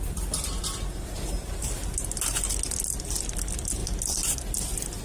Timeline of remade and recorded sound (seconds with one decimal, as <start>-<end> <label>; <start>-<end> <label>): 0.0-5.0 recorded